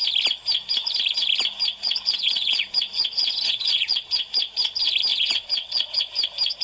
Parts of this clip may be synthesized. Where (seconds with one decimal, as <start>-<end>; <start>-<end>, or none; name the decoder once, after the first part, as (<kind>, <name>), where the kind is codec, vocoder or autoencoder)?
1.8-4.2 (vocoder, Vocos); 5.1-6.0